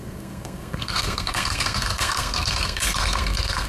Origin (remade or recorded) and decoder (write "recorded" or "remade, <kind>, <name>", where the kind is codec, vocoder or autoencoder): remade, codec, SNAC